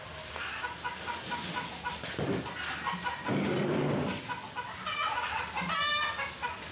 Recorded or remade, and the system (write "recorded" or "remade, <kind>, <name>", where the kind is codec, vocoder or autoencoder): recorded